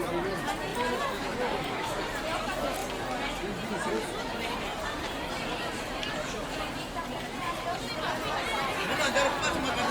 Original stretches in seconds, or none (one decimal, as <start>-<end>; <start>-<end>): 0.0-0.7; 2.0-4.7; 8.0-9.9